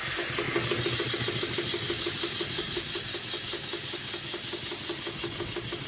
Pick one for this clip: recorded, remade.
recorded